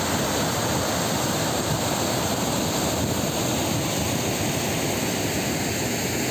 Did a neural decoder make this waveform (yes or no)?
no